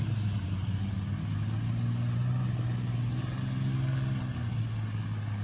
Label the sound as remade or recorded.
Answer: recorded